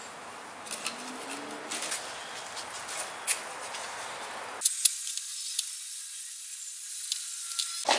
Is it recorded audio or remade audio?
recorded